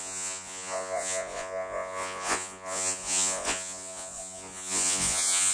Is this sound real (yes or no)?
no